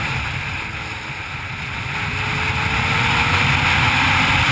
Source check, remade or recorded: recorded